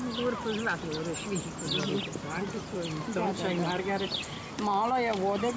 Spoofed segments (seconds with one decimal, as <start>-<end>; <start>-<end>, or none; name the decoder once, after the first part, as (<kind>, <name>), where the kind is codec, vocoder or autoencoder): none